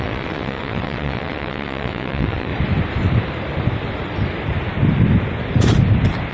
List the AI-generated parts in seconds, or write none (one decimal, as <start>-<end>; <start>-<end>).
0.0-2.5